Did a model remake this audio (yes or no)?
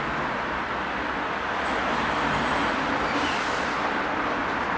no